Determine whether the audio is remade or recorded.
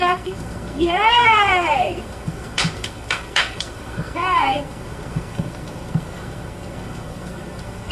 remade